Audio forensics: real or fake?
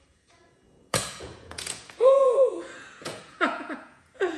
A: fake